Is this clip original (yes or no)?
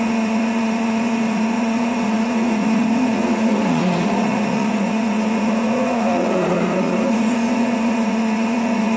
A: no